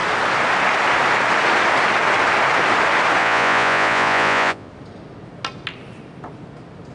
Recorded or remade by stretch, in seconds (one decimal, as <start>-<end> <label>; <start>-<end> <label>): 0.0-3.2 recorded; 3.2-4.7 remade; 4.7-6.9 recorded

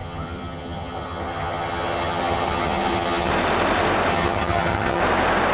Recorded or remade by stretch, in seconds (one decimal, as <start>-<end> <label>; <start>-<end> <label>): 0.0-3.3 remade; 3.3-4.1 recorded; 4.1-5.0 remade; 5.0-5.5 recorded

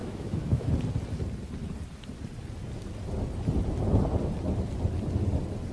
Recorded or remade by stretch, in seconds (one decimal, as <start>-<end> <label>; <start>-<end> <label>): 0.0-0.7 remade; 0.7-5.7 recorded

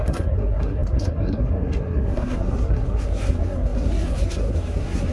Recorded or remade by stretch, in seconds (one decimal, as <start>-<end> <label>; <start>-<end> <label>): 0.0-5.1 remade

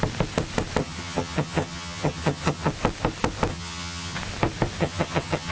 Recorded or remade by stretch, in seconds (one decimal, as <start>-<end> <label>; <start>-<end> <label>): 0.0-0.8 recorded; 0.8-2.7 remade; 2.7-3.5 recorded; 3.5-4.2 remade; 4.2-4.8 recorded; 4.8-5.5 remade

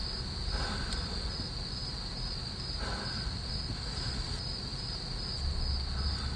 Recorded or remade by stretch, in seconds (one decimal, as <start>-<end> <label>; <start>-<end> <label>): 0.0-6.4 recorded

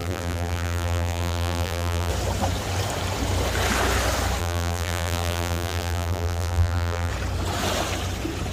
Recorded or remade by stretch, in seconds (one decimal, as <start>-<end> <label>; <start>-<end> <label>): 0.0-2.1 remade; 2.1-4.4 recorded; 4.4-7.1 remade; 7.1-8.5 recorded

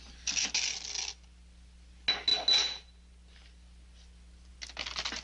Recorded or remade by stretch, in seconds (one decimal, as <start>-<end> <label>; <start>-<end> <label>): 0.0-5.2 recorded